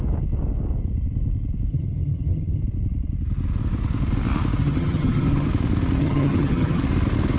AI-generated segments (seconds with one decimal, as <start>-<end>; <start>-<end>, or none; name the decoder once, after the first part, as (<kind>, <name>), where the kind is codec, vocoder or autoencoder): 1.7-2.6 (vocoder, HiFi-GAN); 4.6-5.5; 6.0-6.8